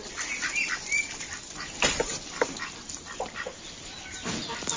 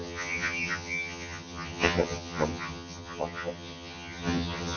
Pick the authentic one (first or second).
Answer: first